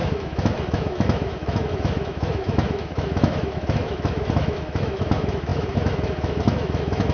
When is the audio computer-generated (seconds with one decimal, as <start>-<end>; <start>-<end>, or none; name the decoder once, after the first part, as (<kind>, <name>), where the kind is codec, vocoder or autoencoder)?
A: 0.0-7.1 (autoencoder, DAC-VAE)